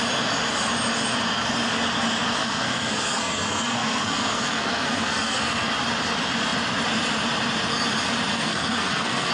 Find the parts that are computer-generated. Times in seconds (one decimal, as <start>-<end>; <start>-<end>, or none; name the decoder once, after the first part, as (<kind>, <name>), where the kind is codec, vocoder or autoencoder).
2.4-5.7 (codec, SNAC); 8.3-9.3

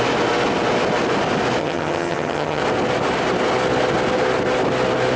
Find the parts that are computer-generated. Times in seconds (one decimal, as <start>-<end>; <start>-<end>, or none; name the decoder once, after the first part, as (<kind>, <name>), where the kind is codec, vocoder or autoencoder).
1.6-2.6 (vocoder, HiFi-GAN)

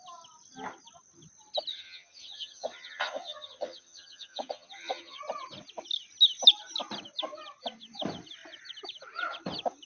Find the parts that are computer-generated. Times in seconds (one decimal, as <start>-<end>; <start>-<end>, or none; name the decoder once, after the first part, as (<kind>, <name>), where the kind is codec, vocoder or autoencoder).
1.7-5.2 (vocoder, HiFi-GAN)

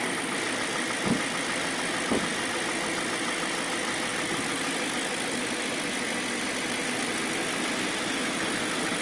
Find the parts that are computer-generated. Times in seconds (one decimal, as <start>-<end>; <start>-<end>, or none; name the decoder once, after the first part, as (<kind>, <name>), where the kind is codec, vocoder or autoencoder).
none